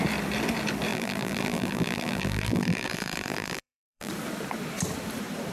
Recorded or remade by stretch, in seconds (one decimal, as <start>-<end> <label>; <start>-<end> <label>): 0.0-0.9 recorded; 0.9-4.1 remade; 4.1-5.5 recorded